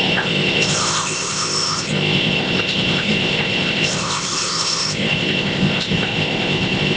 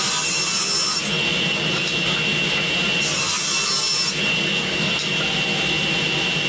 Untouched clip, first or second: second